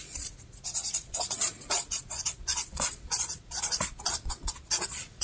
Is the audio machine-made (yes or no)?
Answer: yes